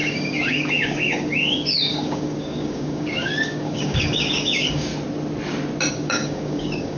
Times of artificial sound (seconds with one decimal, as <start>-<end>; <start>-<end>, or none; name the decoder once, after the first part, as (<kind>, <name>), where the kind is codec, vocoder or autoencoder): 0.0-4.9 (codec, DAC); 5.9-7.0